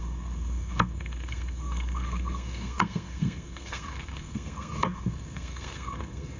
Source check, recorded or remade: remade